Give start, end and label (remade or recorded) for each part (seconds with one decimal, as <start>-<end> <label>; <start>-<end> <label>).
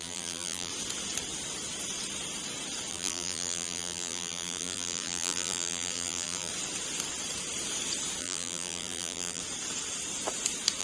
0.0-0.7 remade; 0.7-2.9 recorded; 2.9-6.5 remade; 6.5-8.2 recorded; 8.2-9.4 remade; 9.4-10.8 recorded